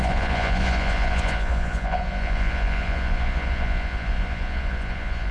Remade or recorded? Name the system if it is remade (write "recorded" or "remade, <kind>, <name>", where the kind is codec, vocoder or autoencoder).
remade, vocoder, Vocos